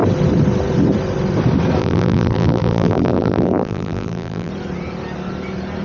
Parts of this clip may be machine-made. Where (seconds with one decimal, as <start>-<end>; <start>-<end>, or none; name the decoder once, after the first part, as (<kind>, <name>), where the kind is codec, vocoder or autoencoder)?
1.8-4.5 (vocoder, BigVGAN v2)